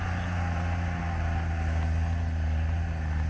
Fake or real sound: real